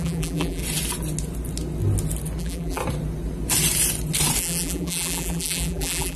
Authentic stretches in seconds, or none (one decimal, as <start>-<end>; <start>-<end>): 0.6-2.4; 2.8-4.4